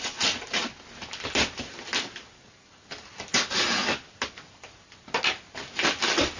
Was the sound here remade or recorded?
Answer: recorded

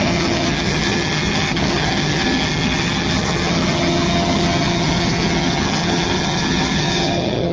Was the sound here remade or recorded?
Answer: remade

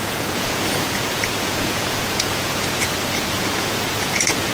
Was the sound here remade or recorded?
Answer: remade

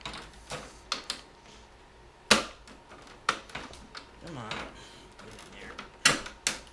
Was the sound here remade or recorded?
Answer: recorded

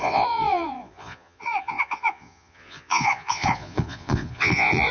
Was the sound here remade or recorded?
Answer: remade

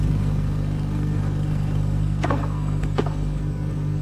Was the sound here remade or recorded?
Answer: remade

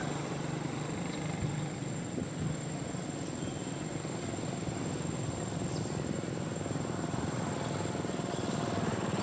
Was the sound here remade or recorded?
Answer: recorded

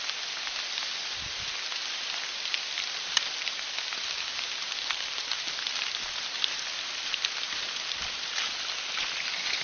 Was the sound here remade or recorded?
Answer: recorded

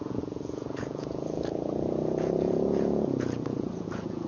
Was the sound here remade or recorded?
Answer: remade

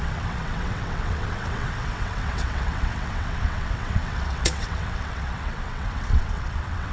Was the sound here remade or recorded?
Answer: remade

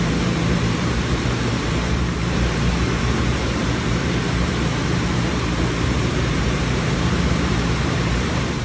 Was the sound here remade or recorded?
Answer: remade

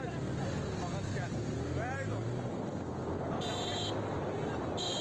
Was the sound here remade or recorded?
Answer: recorded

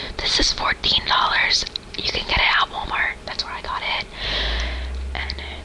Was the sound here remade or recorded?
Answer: recorded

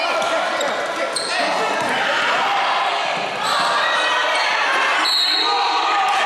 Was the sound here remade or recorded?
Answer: recorded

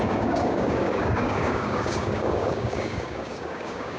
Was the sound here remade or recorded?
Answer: remade